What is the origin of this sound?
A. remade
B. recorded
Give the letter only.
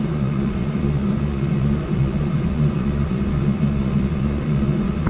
A